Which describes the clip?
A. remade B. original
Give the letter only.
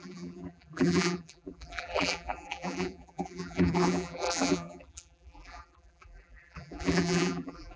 A